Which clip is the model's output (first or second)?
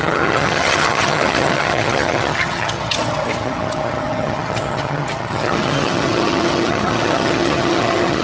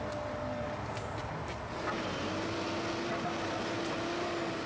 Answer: first